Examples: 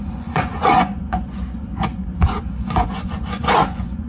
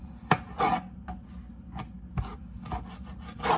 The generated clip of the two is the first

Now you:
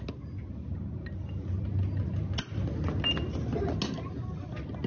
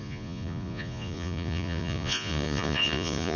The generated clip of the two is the second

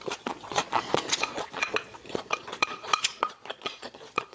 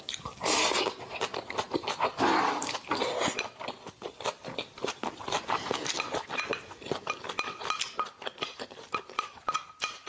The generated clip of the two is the first